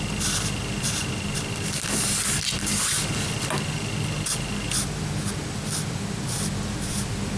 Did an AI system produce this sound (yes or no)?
no